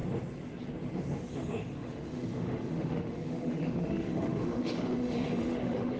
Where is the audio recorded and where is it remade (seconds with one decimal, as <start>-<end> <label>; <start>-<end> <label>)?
0.0-1.2 recorded; 1.2-6.0 remade